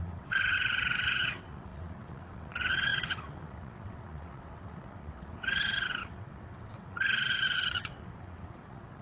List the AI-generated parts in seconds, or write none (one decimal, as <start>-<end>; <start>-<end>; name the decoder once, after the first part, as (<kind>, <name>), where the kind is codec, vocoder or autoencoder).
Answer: 0.0-9.0 (vocoder, WaveNeXt)